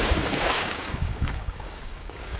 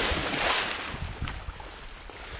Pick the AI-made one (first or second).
first